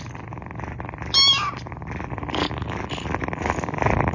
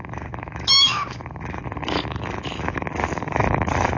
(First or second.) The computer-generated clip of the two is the second